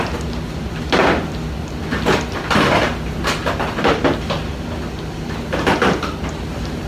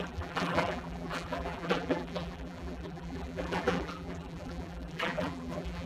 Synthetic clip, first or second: second